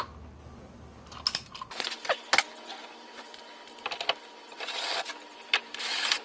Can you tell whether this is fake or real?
real